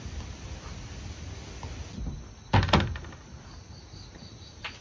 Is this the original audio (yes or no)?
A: yes